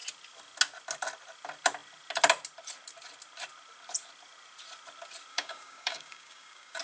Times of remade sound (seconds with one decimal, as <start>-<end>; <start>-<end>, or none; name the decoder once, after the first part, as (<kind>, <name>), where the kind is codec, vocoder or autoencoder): 5.3-6.8 (codec, DAC)